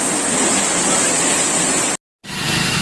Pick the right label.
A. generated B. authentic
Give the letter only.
B